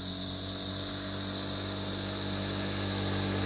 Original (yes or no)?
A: yes